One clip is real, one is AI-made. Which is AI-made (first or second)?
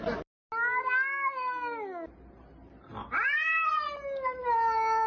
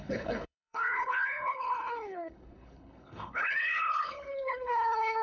second